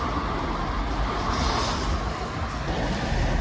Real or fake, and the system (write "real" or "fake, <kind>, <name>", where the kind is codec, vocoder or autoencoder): real